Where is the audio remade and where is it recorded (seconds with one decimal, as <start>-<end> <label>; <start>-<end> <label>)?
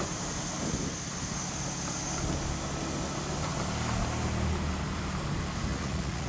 0.0-5.7 recorded; 5.7-6.3 remade